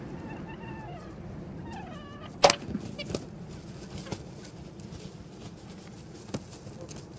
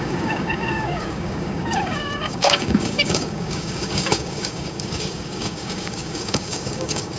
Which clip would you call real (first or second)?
first